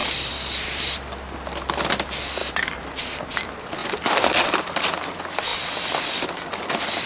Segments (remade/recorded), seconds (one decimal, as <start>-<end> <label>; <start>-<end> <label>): 0.0-1.0 remade; 1.0-2.4 recorded; 2.4-3.0 remade; 3.0-3.8 recorded; 3.8-4.9 remade; 4.9-7.1 recorded